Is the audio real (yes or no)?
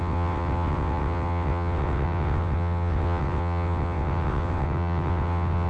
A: no